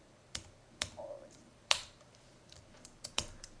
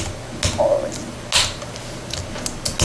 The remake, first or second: first